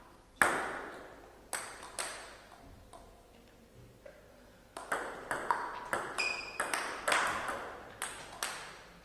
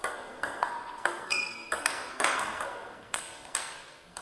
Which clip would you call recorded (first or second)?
first